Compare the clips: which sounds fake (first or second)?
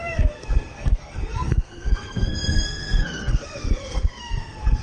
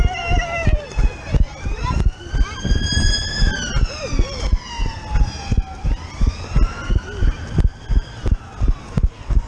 first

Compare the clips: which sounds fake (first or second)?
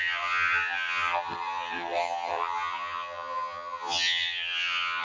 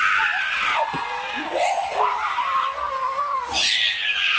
first